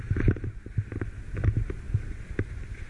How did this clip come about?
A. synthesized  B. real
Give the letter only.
B